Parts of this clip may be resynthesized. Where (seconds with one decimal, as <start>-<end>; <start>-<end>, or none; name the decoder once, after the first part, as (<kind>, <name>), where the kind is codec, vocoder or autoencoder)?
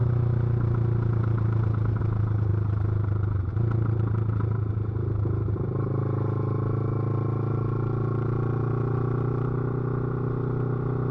none